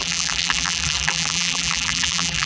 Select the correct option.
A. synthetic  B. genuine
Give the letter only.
A